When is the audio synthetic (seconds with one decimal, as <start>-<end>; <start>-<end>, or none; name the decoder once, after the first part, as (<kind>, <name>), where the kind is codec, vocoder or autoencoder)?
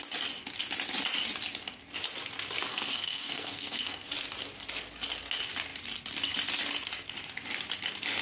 2.7-4.1 (codec, SNAC)